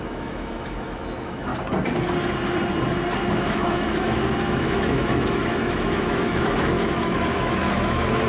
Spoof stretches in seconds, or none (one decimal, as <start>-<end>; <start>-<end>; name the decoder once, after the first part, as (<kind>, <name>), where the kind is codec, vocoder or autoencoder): 0.0-1.5 (autoencoder, DAC-VAE); 3.3-8.3